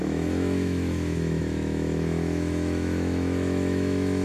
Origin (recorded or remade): remade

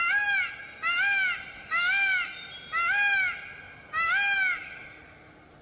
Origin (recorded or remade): recorded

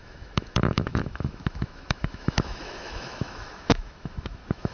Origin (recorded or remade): remade